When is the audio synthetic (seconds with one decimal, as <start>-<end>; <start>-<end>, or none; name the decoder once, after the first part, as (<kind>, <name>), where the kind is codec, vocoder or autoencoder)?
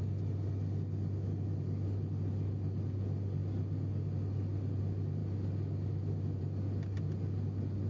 none